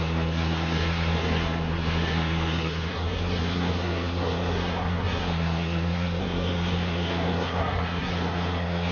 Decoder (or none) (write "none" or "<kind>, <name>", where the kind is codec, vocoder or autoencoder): codec, SNAC